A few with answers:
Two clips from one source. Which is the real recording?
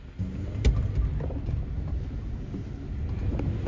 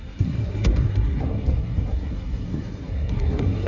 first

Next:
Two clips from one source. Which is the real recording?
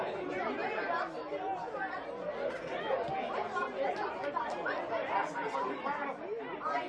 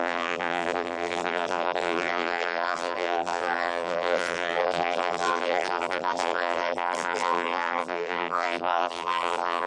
first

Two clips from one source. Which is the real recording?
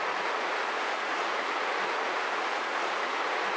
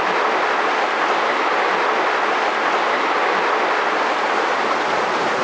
second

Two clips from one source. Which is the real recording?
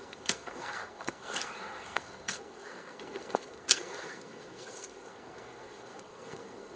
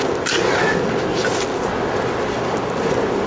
second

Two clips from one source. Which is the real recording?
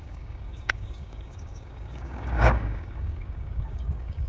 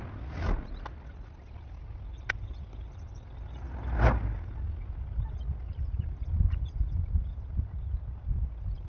second